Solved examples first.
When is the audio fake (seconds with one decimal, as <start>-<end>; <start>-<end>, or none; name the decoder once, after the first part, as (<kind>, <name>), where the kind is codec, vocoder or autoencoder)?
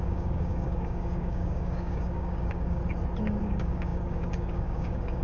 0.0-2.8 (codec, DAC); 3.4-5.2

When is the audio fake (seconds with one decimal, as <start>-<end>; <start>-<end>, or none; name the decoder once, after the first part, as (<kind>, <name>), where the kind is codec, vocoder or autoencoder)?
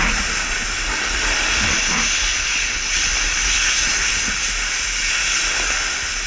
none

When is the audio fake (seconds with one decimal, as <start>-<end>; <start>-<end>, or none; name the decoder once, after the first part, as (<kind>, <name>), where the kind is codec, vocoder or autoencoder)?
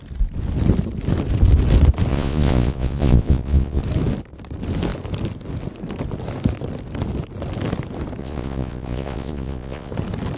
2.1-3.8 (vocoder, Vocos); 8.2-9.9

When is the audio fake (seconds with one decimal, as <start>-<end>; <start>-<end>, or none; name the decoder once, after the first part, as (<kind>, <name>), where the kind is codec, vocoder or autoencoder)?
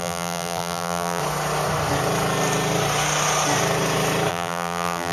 0.0-1.2 (vocoder, BigVGAN v2); 4.3-5.1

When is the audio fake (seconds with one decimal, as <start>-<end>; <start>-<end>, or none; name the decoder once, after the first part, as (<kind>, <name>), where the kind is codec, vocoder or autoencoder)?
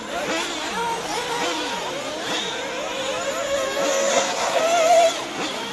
4.1-4.6 (codec, SNAC)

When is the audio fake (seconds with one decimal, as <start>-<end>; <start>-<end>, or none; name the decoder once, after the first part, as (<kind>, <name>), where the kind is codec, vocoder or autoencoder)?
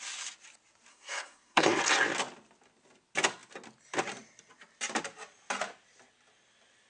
0.9-1.8 (codec, SNAC)